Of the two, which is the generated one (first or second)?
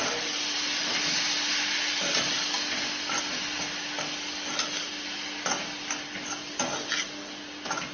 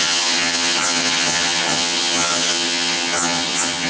second